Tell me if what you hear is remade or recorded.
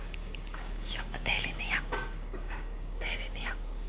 remade